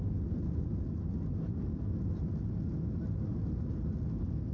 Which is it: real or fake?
real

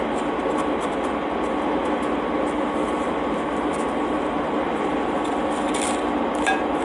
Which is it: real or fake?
real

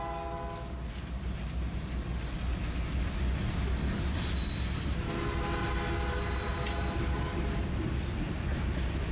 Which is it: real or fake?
real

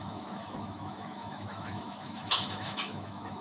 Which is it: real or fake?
fake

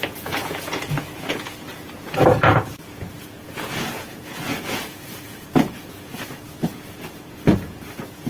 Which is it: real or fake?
fake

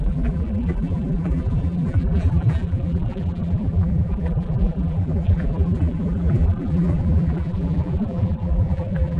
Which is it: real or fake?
fake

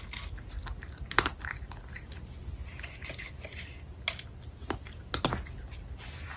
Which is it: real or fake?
real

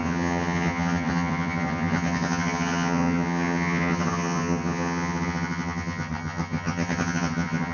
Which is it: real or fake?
fake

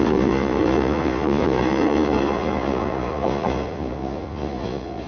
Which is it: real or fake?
fake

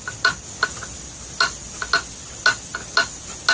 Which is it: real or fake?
real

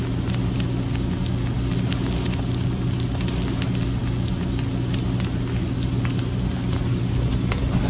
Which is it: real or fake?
real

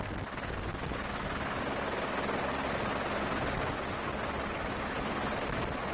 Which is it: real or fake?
real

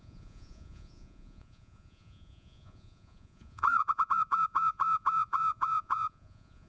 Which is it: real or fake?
fake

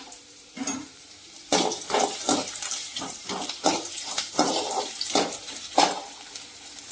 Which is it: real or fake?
fake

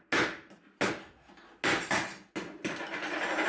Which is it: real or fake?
real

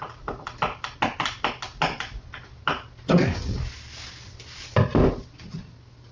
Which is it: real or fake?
real